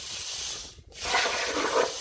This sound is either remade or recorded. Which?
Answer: recorded